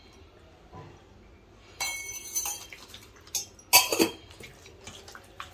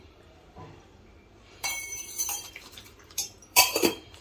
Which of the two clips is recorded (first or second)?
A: first